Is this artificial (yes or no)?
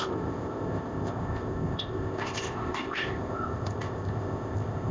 yes